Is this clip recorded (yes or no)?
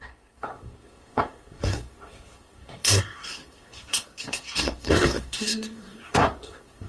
no